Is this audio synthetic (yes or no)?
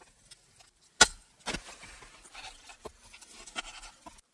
no